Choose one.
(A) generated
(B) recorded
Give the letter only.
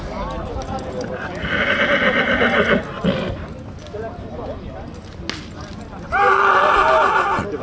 B